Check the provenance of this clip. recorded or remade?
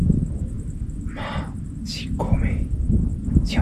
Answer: recorded